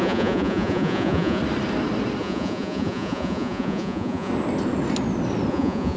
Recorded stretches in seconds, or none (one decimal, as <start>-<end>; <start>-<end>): 1.4-2.2; 4.3-5.5